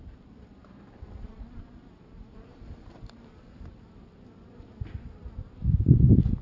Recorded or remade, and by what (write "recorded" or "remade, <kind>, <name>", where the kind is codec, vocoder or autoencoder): remade, vocoder, BigVGAN v2